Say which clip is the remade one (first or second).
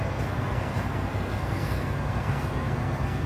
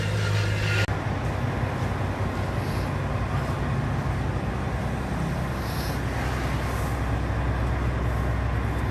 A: first